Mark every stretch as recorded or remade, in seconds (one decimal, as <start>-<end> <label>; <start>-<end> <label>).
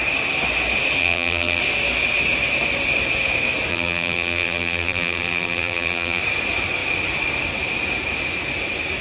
0.0-1.0 recorded; 1.0-1.6 remade; 1.6-3.7 recorded; 3.7-6.2 remade; 6.2-9.0 recorded